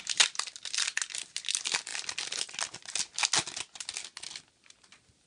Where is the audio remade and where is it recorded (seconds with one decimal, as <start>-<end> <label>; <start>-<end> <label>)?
0.0-5.3 recorded